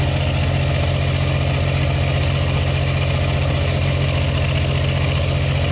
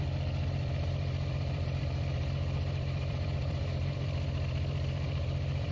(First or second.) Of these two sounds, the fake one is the second